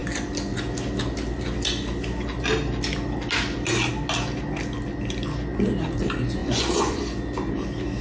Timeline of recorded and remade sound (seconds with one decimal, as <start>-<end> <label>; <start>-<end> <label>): 0.0-6.4 recorded; 6.4-7.0 remade; 7.0-8.0 recorded